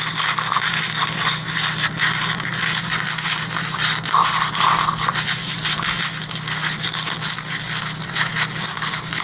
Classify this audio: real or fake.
real